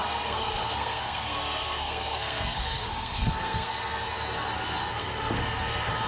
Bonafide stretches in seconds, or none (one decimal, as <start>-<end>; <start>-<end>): 3.7-4.8; 5.4-6.1